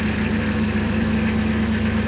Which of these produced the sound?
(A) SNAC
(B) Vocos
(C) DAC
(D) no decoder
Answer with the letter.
D